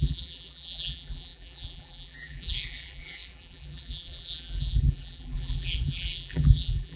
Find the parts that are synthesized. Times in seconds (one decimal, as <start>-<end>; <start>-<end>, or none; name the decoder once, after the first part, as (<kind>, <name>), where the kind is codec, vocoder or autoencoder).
0.0-7.0 (vocoder, BigVGAN v2)